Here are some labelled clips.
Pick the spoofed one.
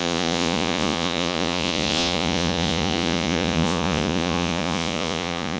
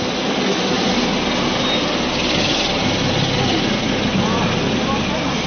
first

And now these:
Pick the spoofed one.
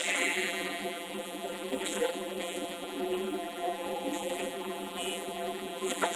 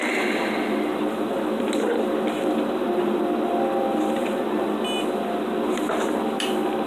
first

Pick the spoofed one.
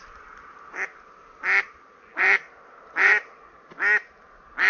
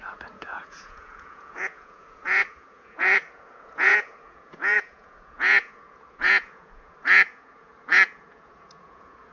second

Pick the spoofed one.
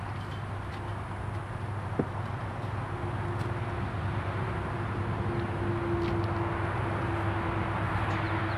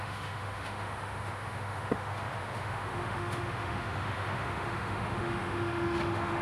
second